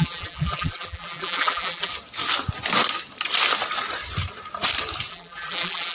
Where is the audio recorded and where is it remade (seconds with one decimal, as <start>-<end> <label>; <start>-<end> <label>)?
0.0-1.9 remade; 1.9-5.1 recorded; 5.1-5.9 remade